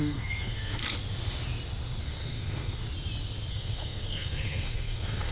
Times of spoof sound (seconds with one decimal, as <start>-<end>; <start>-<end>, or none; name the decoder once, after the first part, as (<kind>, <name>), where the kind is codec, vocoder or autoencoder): 0.0-0.8 (codec, SNAC); 2.0-2.8; 3.5-5.3